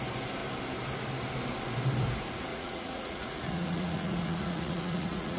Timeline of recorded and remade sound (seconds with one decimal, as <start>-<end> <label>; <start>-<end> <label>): 0.0-2.5 recorded; 2.5-5.4 remade